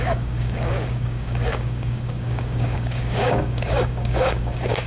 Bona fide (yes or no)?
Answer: no